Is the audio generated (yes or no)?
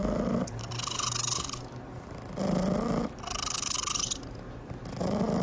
no